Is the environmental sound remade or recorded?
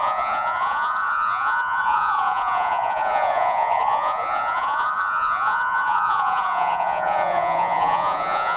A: remade